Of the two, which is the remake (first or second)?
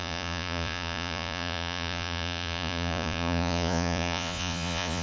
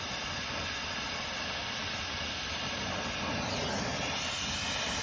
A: first